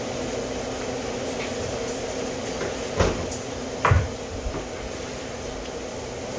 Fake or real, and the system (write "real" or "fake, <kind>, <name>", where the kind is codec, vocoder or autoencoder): real